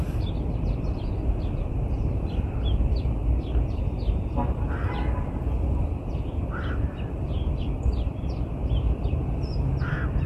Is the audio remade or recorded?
remade